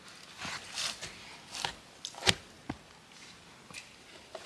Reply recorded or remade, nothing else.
recorded